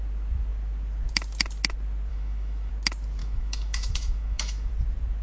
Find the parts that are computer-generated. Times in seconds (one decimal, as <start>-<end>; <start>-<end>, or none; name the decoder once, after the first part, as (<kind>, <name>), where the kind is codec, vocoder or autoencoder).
2.1-2.7 (autoencoder, DAC-VAE); 3.2-4.7